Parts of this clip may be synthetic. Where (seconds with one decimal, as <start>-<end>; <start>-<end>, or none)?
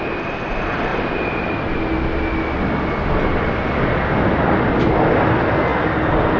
none